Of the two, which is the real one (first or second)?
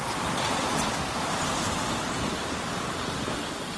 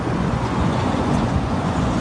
first